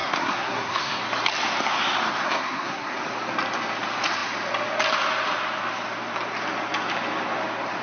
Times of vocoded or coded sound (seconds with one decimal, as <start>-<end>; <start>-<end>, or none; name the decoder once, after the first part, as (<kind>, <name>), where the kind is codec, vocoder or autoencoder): 0.0-1.0 (codec, SNAC); 2.2-3.0